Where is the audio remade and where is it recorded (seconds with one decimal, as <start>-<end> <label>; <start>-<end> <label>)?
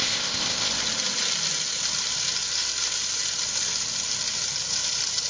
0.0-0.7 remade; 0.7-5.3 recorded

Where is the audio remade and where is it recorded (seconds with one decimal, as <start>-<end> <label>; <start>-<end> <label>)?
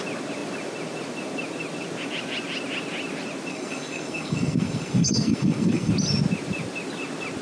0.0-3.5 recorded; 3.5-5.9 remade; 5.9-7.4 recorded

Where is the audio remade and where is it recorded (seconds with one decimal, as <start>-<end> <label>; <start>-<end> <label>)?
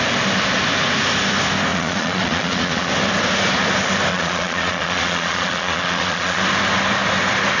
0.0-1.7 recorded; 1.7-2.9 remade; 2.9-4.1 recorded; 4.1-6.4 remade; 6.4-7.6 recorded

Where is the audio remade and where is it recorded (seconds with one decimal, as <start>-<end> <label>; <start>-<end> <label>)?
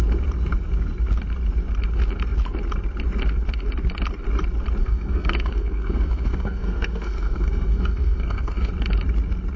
0.0-4.8 recorded; 4.8-8.7 remade; 8.7-9.6 recorded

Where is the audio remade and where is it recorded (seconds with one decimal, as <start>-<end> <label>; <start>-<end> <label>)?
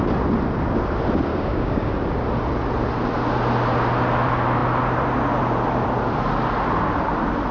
0.0-1.3 recorded; 1.3-1.9 remade; 1.9-7.5 recorded